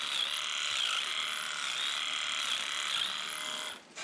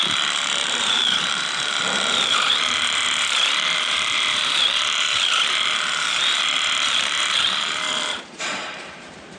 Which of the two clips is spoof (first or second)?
second